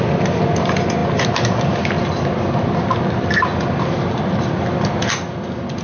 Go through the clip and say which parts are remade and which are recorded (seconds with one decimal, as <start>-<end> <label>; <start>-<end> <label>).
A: 0.0-5.8 recorded